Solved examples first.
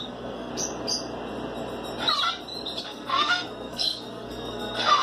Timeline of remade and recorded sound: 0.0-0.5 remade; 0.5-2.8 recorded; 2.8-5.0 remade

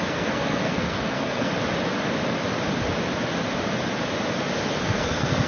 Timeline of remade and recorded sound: 0.0-1.5 remade; 1.5-4.8 recorded; 4.8-5.5 remade

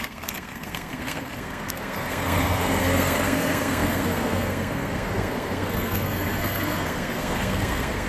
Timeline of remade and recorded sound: 0.0-8.1 remade

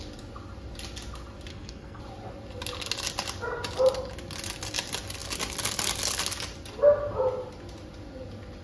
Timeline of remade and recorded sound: 0.0-1.5 recorded; 1.5-2.0 remade; 2.0-8.6 recorded

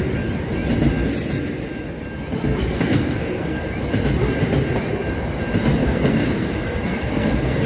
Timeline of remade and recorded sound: 0.0-2.6 recorded; 2.6-3.6 remade; 3.6-5.8 recorded; 5.8-7.7 remade